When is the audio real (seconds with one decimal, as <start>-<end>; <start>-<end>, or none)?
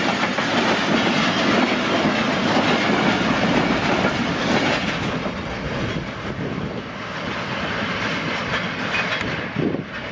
0.0-10.1